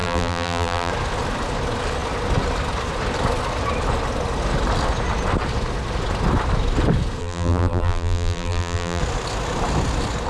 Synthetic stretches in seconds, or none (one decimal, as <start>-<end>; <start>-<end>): 0.0-0.9; 7.2-9.0